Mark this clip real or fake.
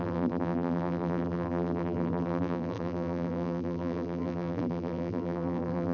fake